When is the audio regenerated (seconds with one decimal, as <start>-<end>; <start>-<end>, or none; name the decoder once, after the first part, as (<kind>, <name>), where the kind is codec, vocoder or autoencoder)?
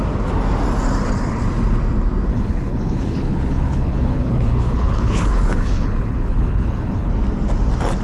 2.3-7.1 (codec, HILCodec)